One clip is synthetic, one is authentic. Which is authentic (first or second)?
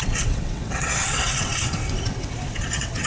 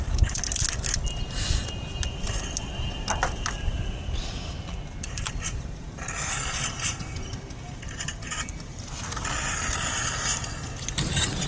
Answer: second